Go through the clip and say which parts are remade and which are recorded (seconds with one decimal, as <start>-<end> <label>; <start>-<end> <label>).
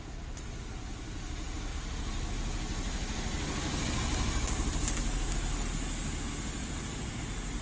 0.0-7.6 recorded